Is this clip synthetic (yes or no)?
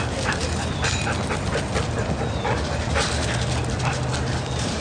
no